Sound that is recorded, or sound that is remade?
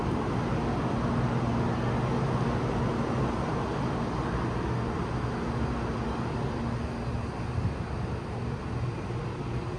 recorded